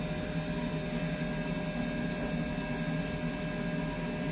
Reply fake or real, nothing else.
real